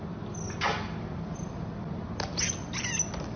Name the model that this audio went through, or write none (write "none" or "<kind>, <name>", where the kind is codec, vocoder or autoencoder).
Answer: none